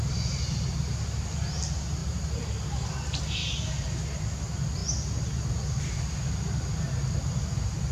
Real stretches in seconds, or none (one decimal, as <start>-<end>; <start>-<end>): 0.0-2.0; 2.9-3.4; 4.2-7.9